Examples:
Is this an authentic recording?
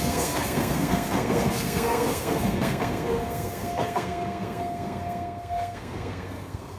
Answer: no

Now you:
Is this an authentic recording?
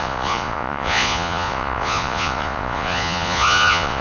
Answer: no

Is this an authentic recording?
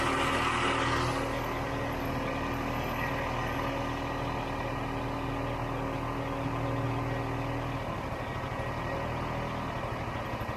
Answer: yes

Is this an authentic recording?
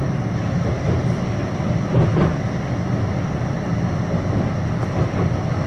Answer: yes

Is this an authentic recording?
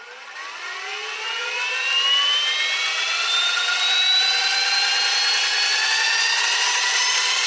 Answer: yes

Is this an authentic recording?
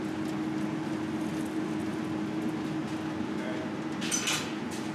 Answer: yes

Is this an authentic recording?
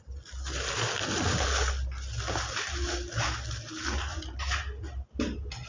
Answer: yes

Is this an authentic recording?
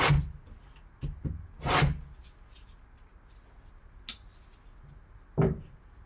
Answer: yes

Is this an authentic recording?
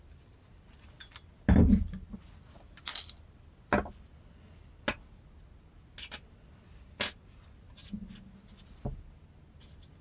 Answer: yes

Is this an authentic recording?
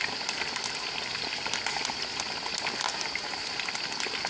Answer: yes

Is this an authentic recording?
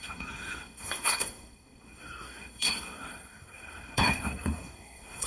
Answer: no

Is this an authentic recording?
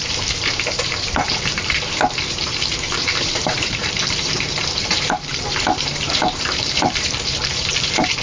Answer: no